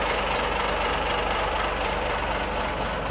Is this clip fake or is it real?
real